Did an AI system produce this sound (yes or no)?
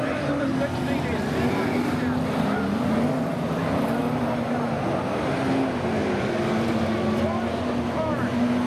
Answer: no